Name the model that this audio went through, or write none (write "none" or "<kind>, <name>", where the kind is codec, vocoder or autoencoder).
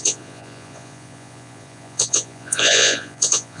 vocoder, Vocos